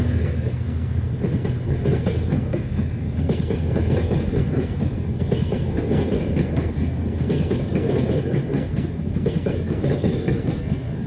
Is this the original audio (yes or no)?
no